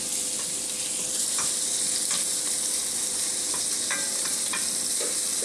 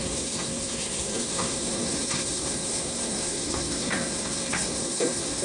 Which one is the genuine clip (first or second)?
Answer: first